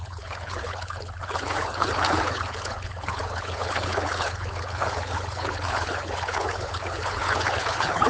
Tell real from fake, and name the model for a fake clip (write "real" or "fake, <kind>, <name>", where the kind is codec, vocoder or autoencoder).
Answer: fake, codec, HILCodec